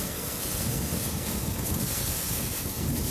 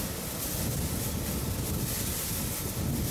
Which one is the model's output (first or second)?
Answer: first